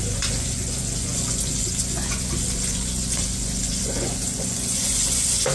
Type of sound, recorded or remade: remade